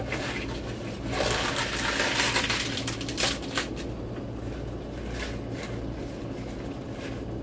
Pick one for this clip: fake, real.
real